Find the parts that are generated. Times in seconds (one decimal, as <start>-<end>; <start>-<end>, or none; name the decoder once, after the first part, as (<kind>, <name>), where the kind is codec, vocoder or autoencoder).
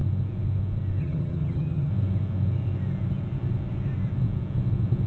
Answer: 1.0-1.9 (vocoder, HiFi-GAN)